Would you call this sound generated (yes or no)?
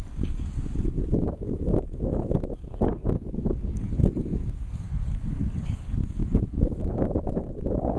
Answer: yes